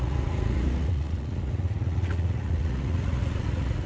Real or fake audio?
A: fake